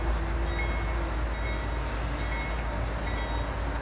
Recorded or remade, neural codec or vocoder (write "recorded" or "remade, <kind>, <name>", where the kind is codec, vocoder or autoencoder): recorded